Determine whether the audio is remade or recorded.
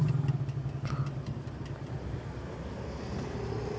recorded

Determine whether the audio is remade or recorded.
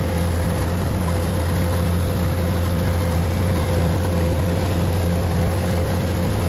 recorded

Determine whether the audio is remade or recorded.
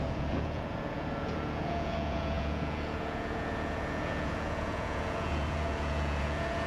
remade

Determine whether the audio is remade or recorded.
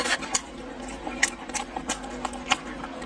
recorded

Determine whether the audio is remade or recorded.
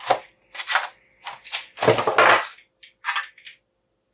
recorded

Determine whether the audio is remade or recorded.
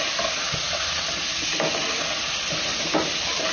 recorded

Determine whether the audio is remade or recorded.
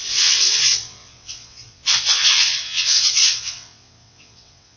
remade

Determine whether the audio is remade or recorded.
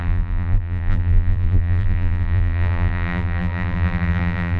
remade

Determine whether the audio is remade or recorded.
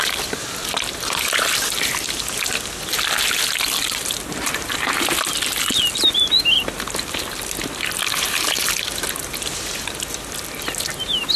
recorded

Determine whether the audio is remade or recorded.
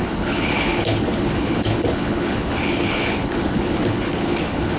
remade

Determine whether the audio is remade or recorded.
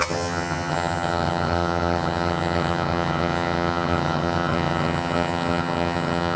remade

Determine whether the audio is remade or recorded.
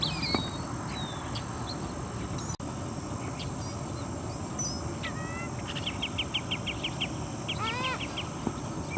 recorded